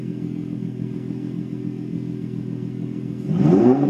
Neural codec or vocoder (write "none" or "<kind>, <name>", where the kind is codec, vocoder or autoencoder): codec, SNAC